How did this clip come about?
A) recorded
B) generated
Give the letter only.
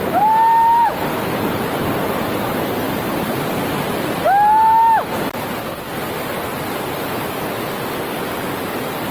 A